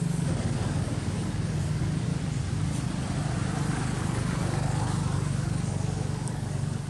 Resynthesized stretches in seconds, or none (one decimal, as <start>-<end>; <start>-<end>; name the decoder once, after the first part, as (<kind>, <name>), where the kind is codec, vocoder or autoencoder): 0.0-2.1 (codec, DAC); 3.7-6.9